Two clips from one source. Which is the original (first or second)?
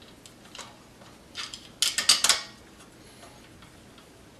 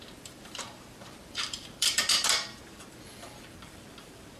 first